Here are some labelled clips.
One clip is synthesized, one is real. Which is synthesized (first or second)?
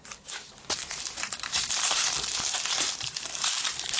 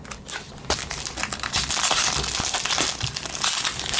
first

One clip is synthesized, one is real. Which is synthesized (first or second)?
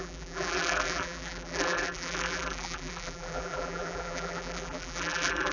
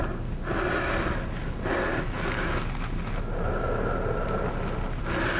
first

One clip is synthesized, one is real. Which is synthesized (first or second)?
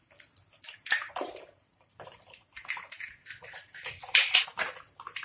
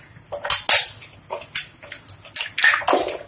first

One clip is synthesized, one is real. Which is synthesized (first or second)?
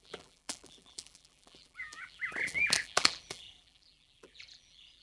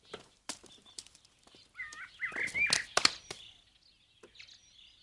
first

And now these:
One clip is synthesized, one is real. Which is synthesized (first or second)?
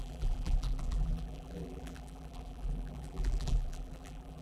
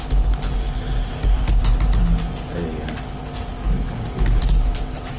first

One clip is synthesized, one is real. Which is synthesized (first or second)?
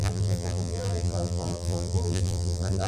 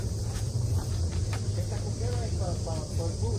first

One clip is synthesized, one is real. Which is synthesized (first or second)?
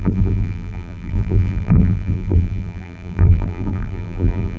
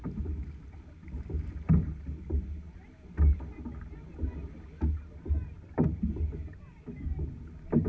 first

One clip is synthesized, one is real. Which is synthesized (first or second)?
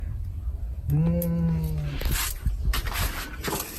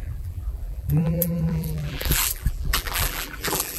second